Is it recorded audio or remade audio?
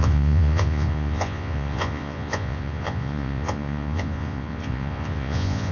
remade